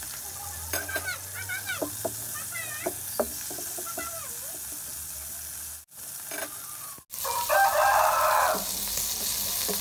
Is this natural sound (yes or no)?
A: yes